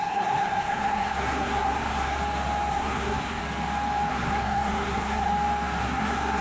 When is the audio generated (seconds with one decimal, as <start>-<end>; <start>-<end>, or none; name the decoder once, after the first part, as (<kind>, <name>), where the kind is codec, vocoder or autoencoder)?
0.0-2.2 (codec, SNAC); 2.7-3.4; 4.1-5.3; 5.8-6.4